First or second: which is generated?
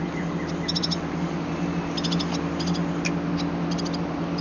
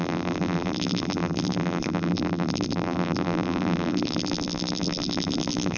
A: second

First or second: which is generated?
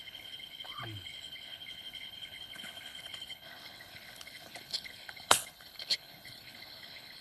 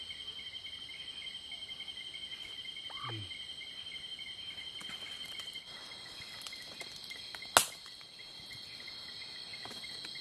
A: first